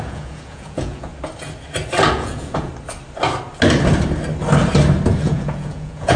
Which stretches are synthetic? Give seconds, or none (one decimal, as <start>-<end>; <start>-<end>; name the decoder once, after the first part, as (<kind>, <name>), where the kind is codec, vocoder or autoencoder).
0.0-1.1 (vocoder, Vocos); 2.1-2.7; 5.1-6.2

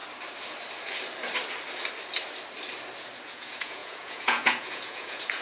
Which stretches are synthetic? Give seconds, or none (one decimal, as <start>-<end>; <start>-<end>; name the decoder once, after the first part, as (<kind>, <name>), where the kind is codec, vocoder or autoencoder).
3.2-5.4 (vocoder, Vocos)

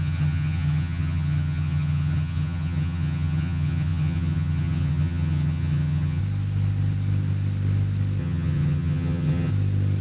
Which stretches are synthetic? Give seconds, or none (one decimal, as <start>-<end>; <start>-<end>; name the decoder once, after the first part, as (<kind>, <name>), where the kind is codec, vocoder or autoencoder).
0.0-6.2 (vocoder, HiFi-GAN); 8.2-9.5

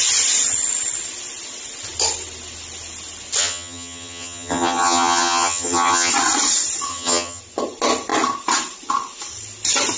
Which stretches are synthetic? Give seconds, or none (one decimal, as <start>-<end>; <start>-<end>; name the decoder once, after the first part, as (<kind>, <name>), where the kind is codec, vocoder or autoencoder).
3.4-6.1 (vocoder, HiFi-GAN); 6.9-7.4

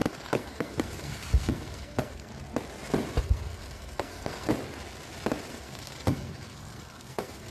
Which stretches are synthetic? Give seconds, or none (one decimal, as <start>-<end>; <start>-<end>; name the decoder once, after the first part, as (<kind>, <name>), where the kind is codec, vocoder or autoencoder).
0.0-2.3 (codec, SNAC); 3.2-4.5; 5.5-7.5

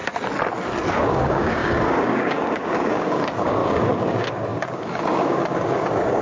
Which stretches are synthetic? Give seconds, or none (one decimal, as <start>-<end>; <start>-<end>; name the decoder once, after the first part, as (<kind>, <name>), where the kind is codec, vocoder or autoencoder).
0.9-6.2 (codec, DAC)